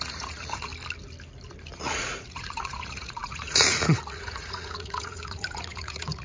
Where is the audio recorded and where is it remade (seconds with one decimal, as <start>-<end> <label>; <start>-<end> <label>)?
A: 0.0-0.7 remade; 0.7-1.8 recorded; 1.8-6.2 remade